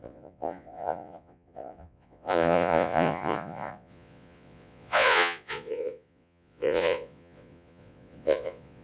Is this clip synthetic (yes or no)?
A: yes